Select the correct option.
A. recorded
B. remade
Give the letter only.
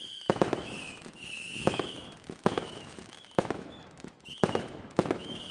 B